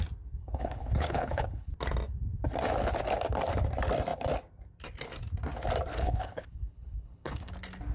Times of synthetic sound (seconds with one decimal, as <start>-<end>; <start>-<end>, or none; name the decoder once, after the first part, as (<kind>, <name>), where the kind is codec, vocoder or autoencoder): 0.4-1.7 (codec, HILCodec); 5.9-7.5